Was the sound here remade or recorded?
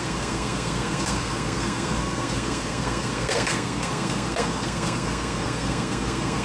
remade